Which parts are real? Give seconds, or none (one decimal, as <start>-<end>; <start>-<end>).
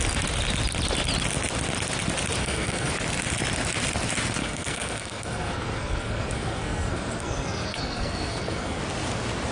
0.0-2.4; 2.9-4.4; 8.8-9.5